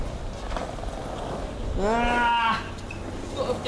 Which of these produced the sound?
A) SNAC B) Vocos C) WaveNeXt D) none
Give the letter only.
D